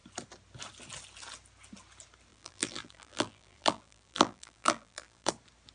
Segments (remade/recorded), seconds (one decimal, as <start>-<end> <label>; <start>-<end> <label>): 0.0-2.3 recorded; 2.3-5.3 remade; 5.3-5.7 recorded